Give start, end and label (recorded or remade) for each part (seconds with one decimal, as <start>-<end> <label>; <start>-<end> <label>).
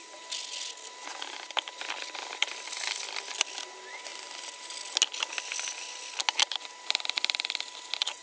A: 0.0-8.2 recorded